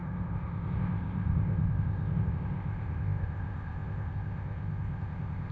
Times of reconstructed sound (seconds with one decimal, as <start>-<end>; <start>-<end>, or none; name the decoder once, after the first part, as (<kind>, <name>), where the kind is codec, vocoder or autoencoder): 0.0-5.5 (codec, ZipCodec)